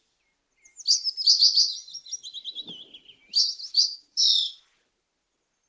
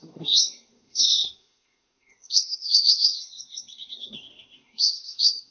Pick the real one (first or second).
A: first